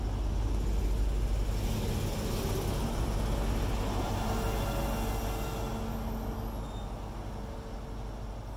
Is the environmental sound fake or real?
real